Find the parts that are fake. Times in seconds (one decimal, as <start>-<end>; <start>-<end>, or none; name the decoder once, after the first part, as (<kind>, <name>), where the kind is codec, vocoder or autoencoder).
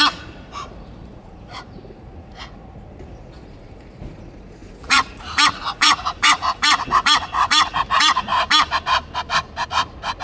0.0-8.3 (vocoder, Vocos); 9.7-10.2